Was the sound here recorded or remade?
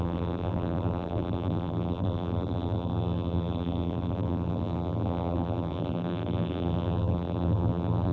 remade